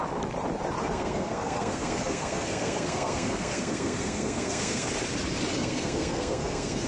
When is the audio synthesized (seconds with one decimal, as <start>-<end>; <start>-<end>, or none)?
0.8-4.9; 5.5-6.9